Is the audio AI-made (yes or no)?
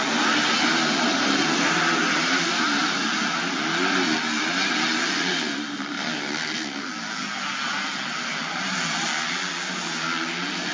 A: no